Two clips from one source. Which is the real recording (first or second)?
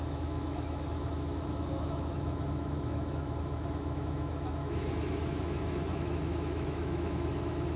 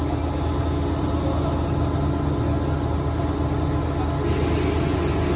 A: second